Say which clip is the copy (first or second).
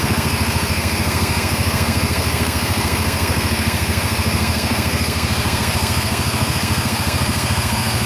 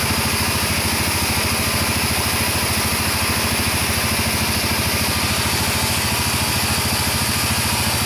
first